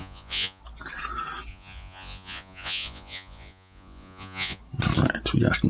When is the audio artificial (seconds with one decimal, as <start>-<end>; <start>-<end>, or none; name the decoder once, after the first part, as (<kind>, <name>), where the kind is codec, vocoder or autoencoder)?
0.0-0.6 (vocoder, Vocos); 1.5-4.6

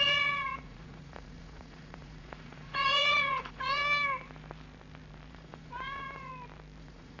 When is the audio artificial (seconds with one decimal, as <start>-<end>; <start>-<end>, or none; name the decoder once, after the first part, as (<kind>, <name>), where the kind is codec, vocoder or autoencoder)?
0.0-3.8 (vocoder, Vocos); 5.3-6.3; 6.8-7.2